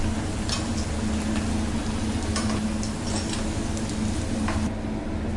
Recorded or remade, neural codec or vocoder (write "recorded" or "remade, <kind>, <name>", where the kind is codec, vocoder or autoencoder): recorded